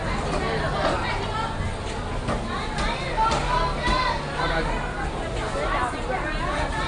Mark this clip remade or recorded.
recorded